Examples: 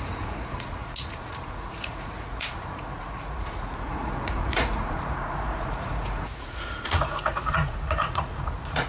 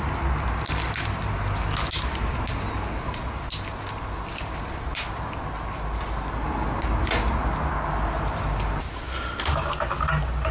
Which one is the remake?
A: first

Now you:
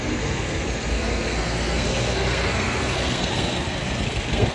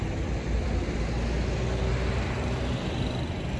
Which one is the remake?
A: first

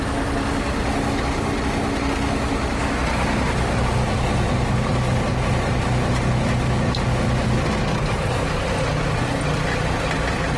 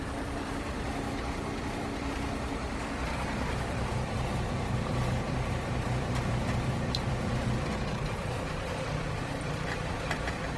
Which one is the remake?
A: second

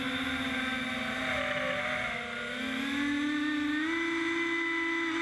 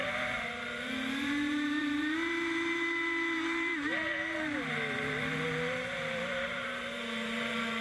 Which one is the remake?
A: second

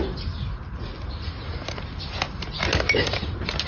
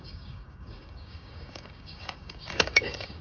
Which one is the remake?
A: second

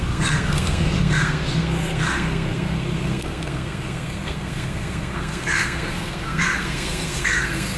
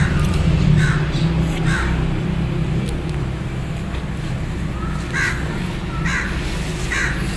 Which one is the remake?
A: first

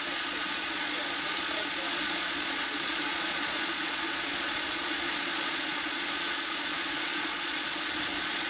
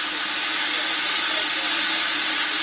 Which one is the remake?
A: first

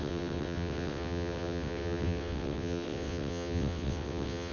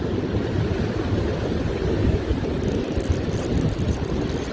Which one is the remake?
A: first